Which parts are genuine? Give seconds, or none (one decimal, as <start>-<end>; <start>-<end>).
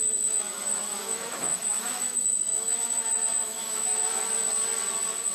4.2-5.3